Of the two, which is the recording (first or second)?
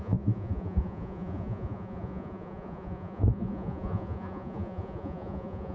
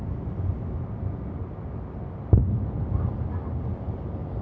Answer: second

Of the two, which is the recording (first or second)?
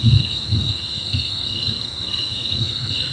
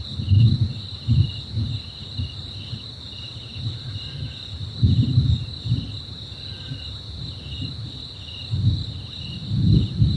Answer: second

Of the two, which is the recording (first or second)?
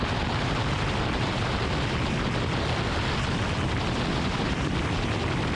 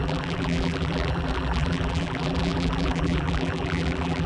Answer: first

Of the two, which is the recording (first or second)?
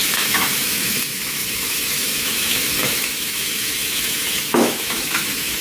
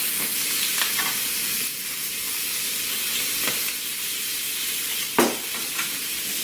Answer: second